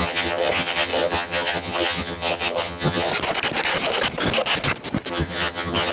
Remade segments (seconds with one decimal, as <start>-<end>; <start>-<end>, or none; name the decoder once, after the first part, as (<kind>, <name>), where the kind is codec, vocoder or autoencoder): 0.0-3.1 (vocoder, HiFi-GAN); 5.1-5.9

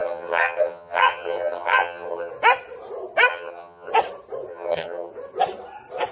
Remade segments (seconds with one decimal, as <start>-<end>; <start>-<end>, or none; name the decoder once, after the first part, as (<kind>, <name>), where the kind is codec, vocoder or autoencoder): 0.0-2.3 (vocoder, HiFi-GAN); 3.3-3.9; 4.5-5.1

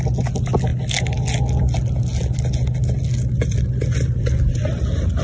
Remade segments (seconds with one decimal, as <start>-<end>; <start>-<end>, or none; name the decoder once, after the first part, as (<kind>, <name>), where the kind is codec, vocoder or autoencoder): none

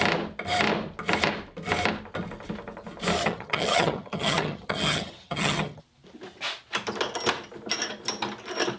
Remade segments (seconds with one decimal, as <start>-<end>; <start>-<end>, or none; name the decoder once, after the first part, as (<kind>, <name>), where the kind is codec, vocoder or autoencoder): 3.2-5.8 (vocoder, HiFi-GAN)

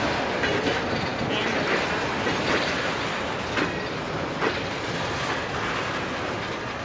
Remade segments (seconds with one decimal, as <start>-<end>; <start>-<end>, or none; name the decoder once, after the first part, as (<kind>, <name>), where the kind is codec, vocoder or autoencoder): none

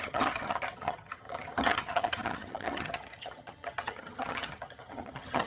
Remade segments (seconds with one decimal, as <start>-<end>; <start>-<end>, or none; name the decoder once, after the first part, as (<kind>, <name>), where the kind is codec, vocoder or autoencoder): 0.0-5.5 (vocoder, HiFi-GAN)